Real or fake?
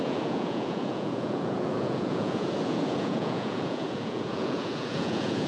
fake